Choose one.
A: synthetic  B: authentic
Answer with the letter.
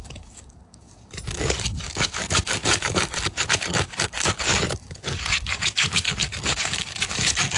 A